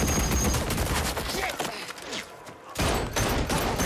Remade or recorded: recorded